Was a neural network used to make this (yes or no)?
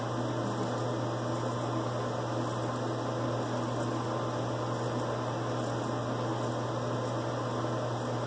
no